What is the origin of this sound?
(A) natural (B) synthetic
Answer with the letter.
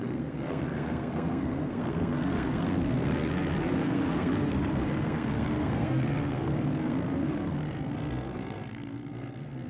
B